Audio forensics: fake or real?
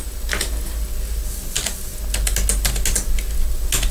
real